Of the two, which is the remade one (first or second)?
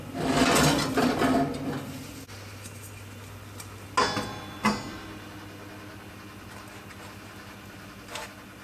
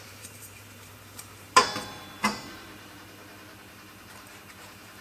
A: second